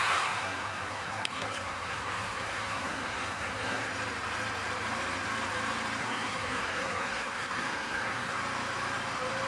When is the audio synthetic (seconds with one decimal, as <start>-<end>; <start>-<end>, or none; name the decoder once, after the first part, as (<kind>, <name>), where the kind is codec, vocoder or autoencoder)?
0.0-3.9 (codec, SNAC); 6.0-8.4

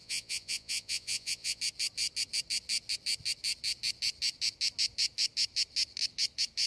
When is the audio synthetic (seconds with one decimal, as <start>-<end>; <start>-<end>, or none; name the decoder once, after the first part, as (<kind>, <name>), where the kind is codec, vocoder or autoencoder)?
0.0-1.6 (vocoder, Vocos)

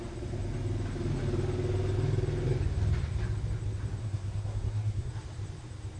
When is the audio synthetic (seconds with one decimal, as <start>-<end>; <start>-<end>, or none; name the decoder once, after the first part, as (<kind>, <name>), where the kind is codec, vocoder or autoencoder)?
4.0-5.1 (codec, SNAC)

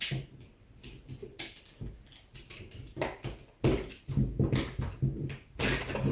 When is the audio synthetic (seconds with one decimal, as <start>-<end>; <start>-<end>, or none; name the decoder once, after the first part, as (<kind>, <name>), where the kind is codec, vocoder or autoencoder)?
none

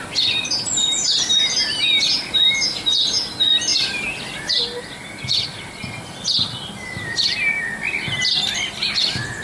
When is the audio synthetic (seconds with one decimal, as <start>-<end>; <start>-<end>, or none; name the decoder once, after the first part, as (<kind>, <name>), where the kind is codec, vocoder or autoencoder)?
none

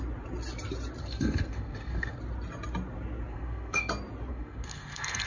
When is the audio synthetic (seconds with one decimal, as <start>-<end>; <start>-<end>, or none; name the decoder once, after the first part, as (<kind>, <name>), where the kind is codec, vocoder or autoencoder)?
1.0-2.2 (codec, SNAC); 3.3-3.9; 4.3-5.3

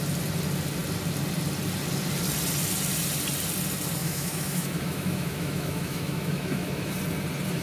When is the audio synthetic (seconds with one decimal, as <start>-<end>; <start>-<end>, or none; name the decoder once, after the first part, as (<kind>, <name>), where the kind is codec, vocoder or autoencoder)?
4.0-6.9 (autoencoder, DAC-VAE)